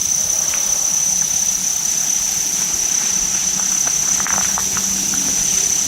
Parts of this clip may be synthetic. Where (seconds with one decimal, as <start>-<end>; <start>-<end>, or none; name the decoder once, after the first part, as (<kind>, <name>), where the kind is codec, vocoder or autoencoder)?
none